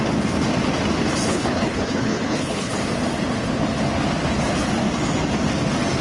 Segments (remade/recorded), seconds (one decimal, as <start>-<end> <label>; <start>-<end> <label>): 0.0-1.3 recorded; 1.3-2.7 remade; 2.7-6.0 recorded